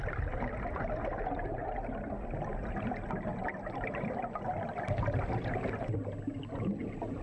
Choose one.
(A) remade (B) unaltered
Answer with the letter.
B